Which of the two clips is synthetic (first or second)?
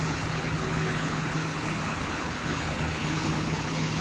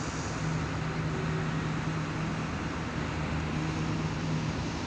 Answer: first